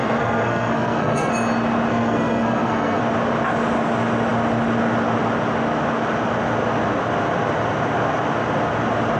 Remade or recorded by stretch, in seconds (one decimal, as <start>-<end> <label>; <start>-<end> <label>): 0.0-1.3 remade; 1.3-1.9 recorded; 1.9-3.0 remade; 3.0-9.2 recorded